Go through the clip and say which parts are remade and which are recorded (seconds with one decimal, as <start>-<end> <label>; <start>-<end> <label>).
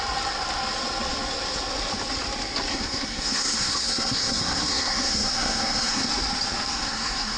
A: 0.0-2.7 recorded; 2.7-6.1 remade; 6.1-6.7 recorded; 6.7-7.4 remade